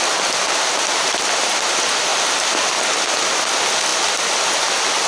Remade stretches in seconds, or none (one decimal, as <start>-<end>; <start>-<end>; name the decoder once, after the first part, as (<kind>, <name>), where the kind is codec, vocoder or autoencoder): none